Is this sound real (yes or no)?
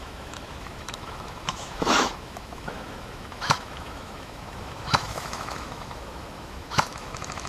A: no